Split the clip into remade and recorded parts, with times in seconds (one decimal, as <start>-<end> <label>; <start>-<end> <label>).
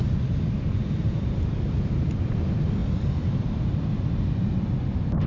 0.0-5.3 recorded